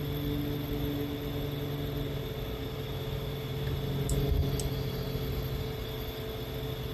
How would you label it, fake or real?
real